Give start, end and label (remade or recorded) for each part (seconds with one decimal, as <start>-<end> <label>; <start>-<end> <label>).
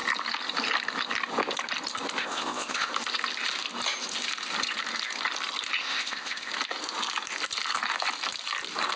0.0-2.2 recorded; 2.2-2.9 remade; 2.9-5.8 recorded; 5.8-6.5 remade; 6.5-9.0 recorded